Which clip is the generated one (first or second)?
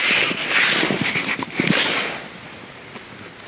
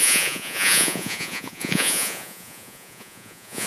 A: second